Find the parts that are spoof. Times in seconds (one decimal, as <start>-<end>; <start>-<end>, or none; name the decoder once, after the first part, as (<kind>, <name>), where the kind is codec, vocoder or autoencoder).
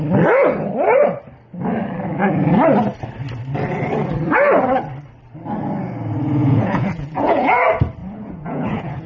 6.4-7.6 (vocoder, Vocos); 8.0-9.1